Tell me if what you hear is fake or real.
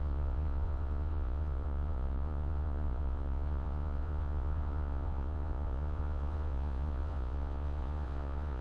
fake